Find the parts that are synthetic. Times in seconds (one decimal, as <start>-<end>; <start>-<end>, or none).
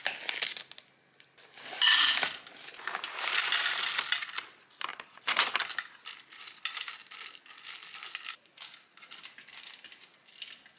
4.9-5.5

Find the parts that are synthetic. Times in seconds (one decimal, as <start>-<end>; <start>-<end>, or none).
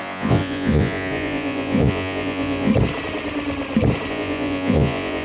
0.0-2.7; 4.1-5.2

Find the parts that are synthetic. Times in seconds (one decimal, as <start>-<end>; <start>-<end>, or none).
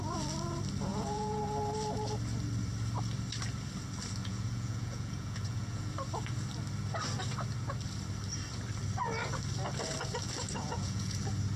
0.9-1.4; 4.2-5.9; 10.6-11.2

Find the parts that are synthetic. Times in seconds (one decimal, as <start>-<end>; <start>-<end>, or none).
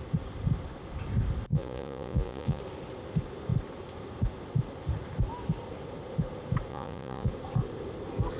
1.5-2.6; 6.7-7.3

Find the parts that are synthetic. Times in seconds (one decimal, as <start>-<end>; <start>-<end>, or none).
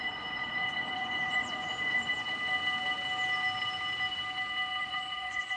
0.0-2.1; 4.8-5.6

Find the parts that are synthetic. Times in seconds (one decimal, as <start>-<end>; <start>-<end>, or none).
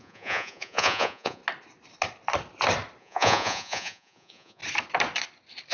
0.0-1.4; 3.0-4.6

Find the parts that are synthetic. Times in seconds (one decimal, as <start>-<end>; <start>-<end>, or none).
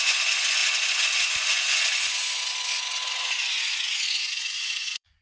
0.0-5.2